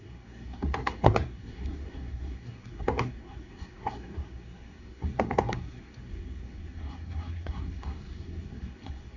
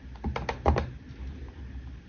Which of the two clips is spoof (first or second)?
first